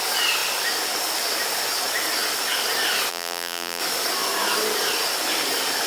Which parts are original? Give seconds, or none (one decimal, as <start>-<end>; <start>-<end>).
0.0-3.1; 3.8-5.9